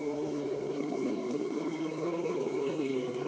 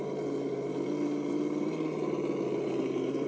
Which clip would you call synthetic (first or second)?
first